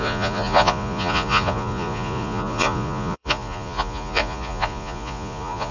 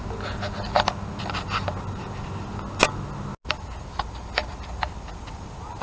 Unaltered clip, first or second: second